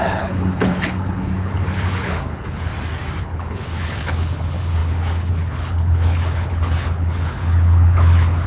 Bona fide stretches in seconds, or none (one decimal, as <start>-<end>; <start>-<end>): 2.7-3.2